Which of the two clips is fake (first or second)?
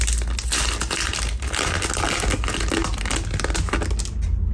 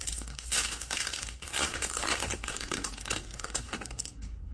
second